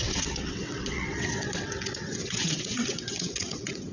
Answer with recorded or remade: remade